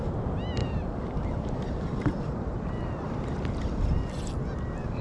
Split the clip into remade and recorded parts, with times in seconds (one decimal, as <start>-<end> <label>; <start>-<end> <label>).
0.0-0.6 recorded; 0.6-3.1 remade; 3.1-5.0 recorded